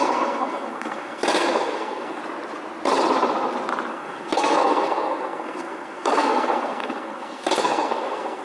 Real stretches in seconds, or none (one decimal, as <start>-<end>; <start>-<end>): 2.2-3.9